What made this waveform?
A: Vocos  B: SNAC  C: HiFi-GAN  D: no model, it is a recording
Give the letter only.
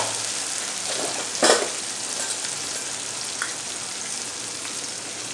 D